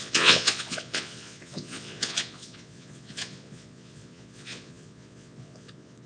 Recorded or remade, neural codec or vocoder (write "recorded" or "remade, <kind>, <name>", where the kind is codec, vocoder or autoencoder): remade, vocoder, Vocos